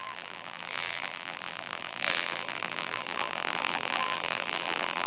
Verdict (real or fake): fake